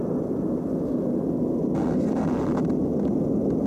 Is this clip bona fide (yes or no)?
yes